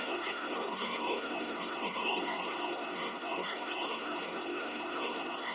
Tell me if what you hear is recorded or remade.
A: remade